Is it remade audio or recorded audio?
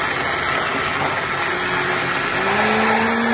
recorded